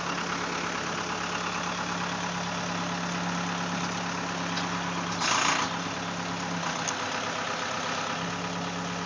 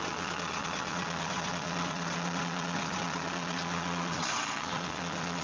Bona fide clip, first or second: first